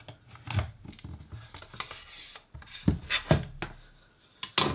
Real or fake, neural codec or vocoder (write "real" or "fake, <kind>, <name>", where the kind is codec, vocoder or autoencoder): real